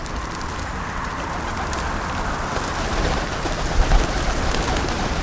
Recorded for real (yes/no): yes